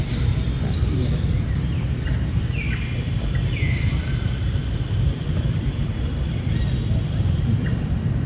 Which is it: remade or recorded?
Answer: remade